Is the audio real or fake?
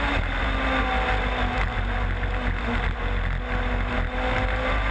real